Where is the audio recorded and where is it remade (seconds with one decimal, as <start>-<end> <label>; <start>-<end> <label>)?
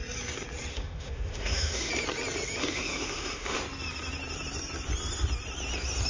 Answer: 0.0-0.7 recorded; 0.7-1.9 remade; 1.9-2.6 recorded; 2.6-3.6 remade; 3.6-6.1 recorded